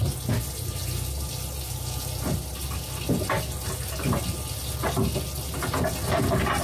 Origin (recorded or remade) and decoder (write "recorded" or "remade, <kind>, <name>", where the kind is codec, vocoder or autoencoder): recorded